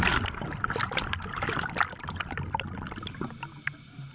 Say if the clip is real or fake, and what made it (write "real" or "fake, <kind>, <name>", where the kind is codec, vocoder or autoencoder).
real